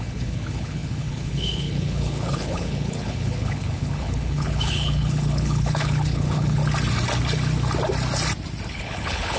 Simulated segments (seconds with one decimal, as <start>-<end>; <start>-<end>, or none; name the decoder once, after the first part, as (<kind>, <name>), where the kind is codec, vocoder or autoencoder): 0.0-6.6 (codec, HILCodec); 8.7-9.4